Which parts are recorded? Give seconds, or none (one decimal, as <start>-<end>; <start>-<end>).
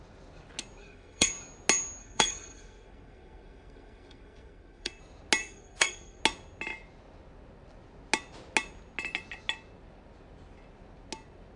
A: 0.0-0.8; 1.3-2.0; 5.0-5.4; 6.2-11.6